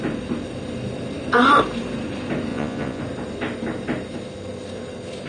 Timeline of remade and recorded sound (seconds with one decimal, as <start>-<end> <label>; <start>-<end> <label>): 0.0-2.5 recorded; 2.5-3.0 remade; 3.0-5.3 recorded